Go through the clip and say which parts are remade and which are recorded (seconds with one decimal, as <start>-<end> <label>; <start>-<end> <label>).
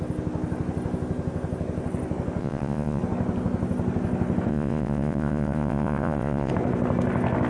0.0-2.4 recorded; 2.4-3.0 remade; 3.0-4.5 recorded; 4.5-6.5 remade; 6.5-7.5 recorded